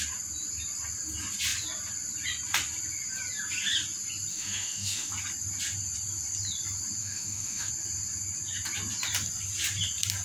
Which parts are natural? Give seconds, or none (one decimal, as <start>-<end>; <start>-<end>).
0.0-4.3; 5.1-7.0; 7.7-10.2